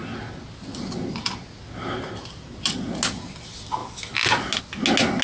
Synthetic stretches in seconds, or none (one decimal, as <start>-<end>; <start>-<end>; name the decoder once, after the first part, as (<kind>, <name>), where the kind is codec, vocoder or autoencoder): none